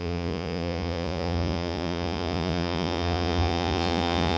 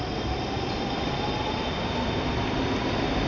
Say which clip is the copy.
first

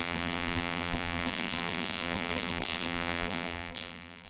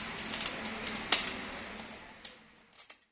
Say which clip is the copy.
first